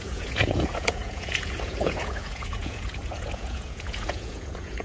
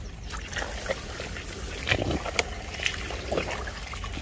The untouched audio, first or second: second